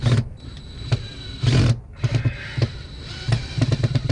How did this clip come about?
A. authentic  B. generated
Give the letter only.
A